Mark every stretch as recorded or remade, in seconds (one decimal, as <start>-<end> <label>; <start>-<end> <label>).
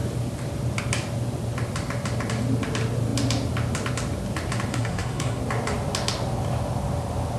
0.0-4.7 recorded; 4.7-5.4 remade; 5.4-7.4 recorded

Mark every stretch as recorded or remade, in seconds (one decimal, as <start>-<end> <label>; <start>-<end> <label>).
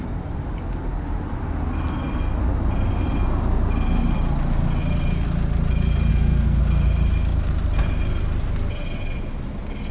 0.0-6.1 recorded; 6.1-6.6 remade; 6.6-9.9 recorded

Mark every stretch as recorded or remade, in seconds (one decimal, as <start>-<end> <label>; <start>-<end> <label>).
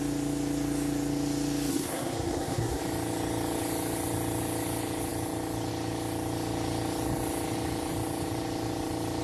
0.0-1.7 recorded; 1.7-2.8 remade; 2.8-9.2 recorded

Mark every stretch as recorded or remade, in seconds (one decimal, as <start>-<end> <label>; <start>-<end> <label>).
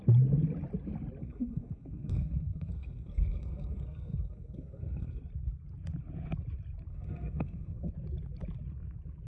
0.0-1.2 recorded; 1.2-5.2 remade; 5.2-6.9 recorded; 6.9-7.9 remade; 7.9-9.3 recorded